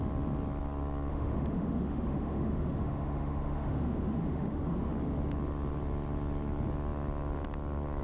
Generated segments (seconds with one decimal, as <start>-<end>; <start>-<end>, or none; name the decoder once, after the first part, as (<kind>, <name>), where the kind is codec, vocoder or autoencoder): 1.1-4.9 (autoencoder, DAC-VAE)